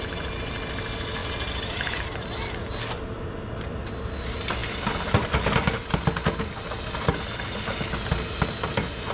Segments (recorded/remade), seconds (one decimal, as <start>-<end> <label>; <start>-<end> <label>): 0.0-9.1 recorded